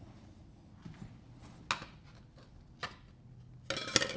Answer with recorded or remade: recorded